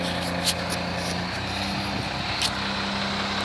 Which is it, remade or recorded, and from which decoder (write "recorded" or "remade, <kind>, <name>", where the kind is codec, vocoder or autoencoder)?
recorded